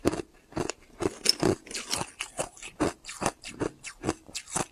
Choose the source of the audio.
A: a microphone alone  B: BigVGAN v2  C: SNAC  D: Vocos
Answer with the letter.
A